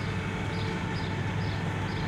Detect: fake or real real